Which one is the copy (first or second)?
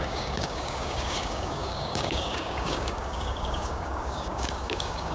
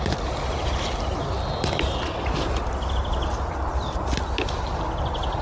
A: first